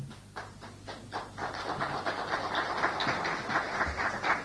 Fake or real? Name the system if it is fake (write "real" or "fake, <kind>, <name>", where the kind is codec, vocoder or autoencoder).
real